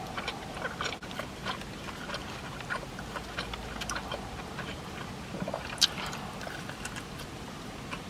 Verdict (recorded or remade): recorded